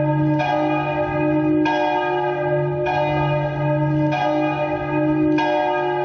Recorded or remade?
recorded